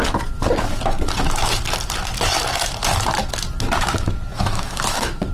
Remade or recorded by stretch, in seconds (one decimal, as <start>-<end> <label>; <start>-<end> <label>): 0.0-4.3 recorded; 4.3-5.3 remade